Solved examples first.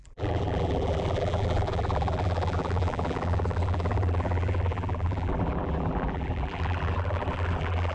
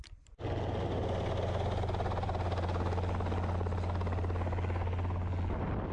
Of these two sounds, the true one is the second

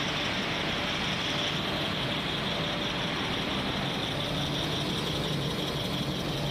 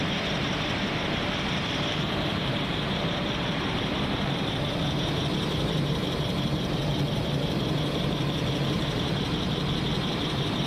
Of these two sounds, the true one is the first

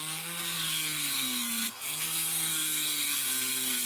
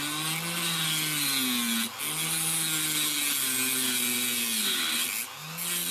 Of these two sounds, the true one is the second